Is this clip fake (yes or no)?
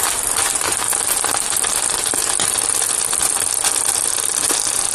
no